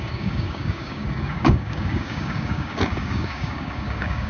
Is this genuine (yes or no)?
no